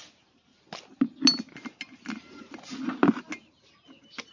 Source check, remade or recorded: recorded